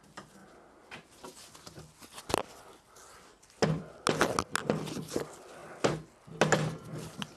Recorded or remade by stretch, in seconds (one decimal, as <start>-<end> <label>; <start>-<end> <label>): 0.0-7.4 recorded